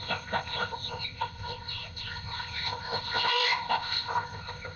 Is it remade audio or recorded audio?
remade